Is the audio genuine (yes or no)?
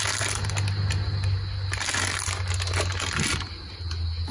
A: yes